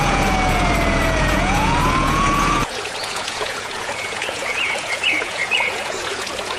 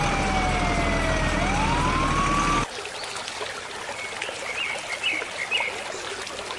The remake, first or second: first